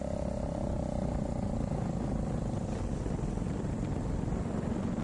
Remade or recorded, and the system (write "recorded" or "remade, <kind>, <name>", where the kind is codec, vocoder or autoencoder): recorded